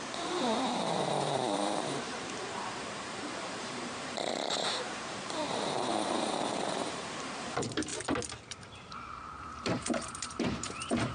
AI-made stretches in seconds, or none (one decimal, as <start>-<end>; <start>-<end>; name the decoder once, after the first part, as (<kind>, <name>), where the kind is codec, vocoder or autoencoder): 0.0-7.9 (vocoder, BigVGAN v2); 8.4-11.1